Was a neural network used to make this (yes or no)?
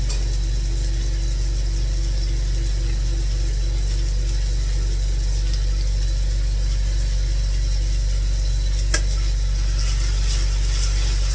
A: no